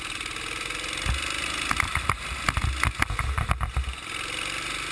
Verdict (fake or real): real